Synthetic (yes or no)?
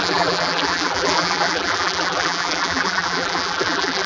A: yes